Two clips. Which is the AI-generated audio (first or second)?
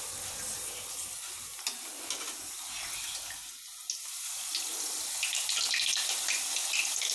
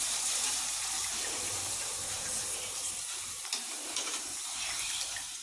second